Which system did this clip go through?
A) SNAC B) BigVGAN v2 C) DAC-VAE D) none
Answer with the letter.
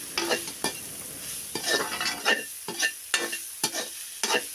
D